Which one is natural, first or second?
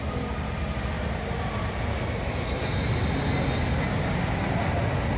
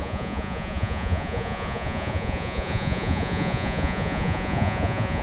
first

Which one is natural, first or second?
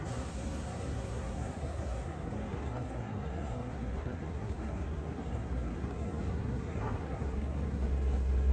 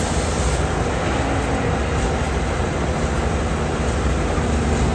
second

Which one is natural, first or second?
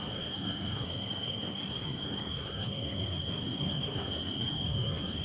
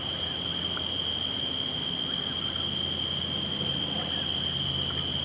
second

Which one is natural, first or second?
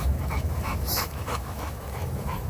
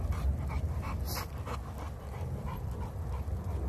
second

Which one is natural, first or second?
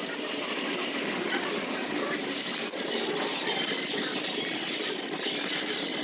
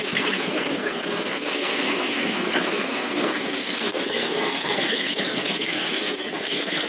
first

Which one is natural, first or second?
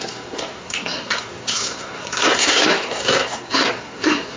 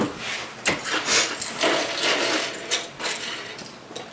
second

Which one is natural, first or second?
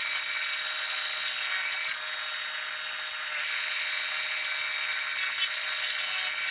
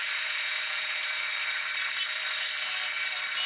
first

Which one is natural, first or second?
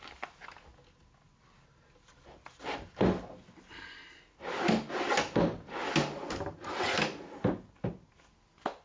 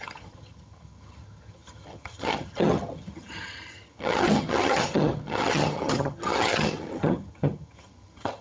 first